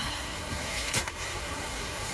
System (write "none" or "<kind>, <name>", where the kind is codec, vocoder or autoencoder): codec, SNAC